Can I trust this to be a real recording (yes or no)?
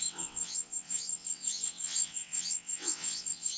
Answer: no